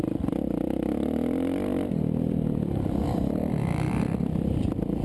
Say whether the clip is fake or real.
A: fake